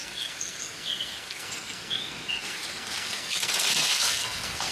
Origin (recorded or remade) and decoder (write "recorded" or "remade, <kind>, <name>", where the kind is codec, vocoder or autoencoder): remade, codec, SNAC